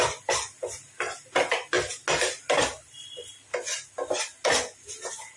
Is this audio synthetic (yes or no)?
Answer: no